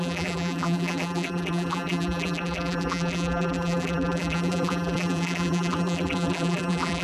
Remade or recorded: remade